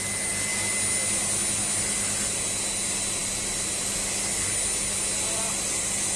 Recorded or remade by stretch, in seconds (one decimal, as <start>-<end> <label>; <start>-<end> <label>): 0.0-6.2 recorded